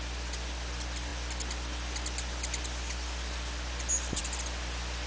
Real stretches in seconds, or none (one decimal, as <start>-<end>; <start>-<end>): 0.0-5.1